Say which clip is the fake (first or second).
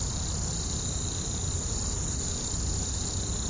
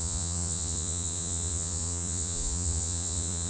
second